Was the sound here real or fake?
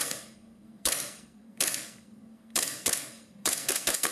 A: fake